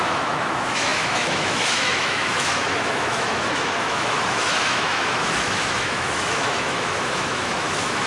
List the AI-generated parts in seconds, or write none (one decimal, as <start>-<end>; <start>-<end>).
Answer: 0.0-8.1